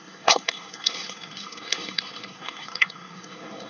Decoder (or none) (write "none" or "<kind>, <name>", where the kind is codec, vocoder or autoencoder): codec, SNAC